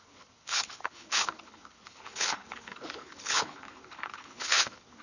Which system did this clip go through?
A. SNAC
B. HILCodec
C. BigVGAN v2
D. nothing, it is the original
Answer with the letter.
B